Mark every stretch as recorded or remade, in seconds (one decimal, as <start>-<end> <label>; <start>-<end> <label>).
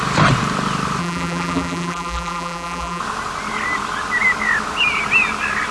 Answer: 0.0-1.0 recorded; 1.0-3.0 remade; 3.0-5.7 recorded